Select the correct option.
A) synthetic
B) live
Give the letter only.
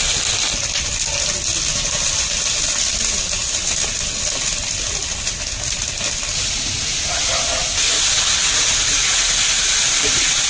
B